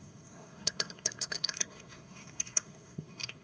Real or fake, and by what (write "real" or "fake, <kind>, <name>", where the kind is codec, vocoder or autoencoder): fake, codec, SNAC